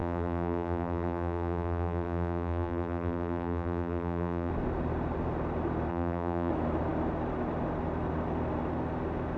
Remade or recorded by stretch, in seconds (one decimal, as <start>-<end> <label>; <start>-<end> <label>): 0.0-4.5 remade; 4.5-5.9 recorded; 5.9-6.5 remade; 6.5-9.4 recorded